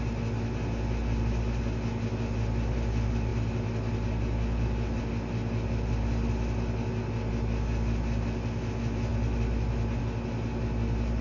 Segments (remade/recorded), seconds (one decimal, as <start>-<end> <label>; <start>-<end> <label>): 0.0-11.2 recorded